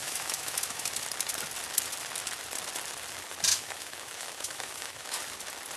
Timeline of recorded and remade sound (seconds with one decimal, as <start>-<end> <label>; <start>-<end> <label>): 0.0-0.9 remade; 0.9-3.5 recorded; 3.5-5.2 remade; 5.2-5.8 recorded